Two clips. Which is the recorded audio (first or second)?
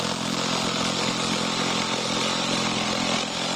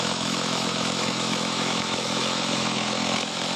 first